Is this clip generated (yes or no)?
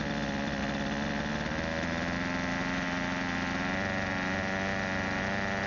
no